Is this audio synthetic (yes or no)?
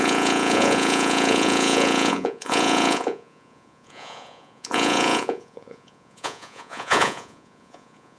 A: yes